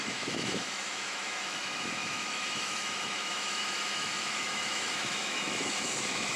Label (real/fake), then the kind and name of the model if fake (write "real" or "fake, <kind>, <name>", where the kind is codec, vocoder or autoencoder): fake, autoencoder, DAC-VAE